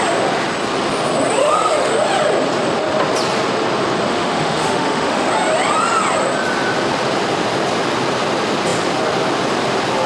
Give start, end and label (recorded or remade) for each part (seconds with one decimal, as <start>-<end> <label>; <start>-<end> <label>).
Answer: 0.0-1.4 recorded; 1.4-1.9 remade; 1.9-4.1 recorded; 4.1-5.3 remade; 5.3-10.1 recorded